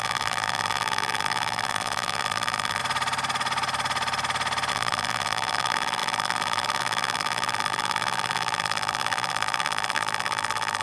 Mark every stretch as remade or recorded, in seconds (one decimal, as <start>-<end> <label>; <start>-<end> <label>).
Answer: 0.0-2.8 remade; 2.8-4.7 recorded; 4.7-10.8 remade